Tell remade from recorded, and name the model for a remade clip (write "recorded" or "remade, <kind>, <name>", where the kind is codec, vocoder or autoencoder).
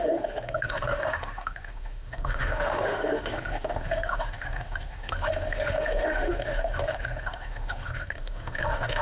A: remade, autoencoder, DAC-VAE